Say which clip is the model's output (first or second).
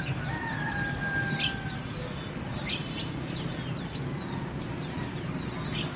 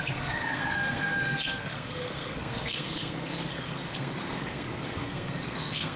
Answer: second